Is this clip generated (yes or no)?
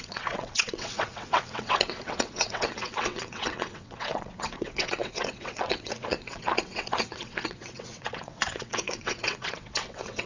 yes